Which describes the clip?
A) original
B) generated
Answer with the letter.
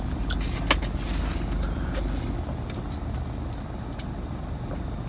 A